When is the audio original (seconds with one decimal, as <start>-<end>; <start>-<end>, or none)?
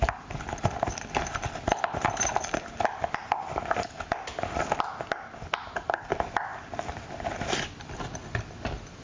0.0-9.0